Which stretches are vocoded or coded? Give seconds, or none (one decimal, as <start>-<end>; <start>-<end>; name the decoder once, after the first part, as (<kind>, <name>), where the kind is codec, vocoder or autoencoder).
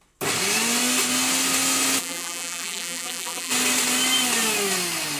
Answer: 2.0-3.5 (vocoder, BigVGAN v2)